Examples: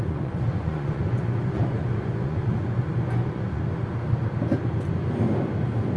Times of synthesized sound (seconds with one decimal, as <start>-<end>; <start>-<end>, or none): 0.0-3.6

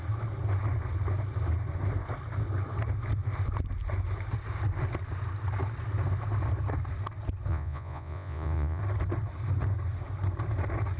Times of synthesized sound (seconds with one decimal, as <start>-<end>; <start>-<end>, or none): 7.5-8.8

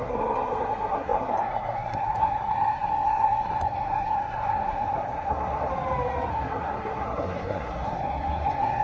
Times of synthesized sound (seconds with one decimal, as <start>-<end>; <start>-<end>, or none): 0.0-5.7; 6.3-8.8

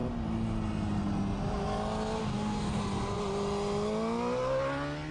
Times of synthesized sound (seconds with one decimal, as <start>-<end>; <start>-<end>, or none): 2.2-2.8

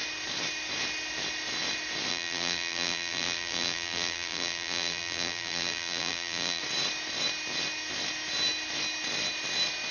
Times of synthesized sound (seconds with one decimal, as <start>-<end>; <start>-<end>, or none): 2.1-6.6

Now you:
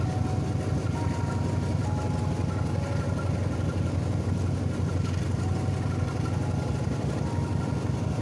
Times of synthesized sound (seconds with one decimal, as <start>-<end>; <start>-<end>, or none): none

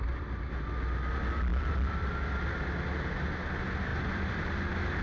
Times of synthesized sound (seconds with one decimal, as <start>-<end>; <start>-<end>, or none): 1.5-2.1; 3.9-4.5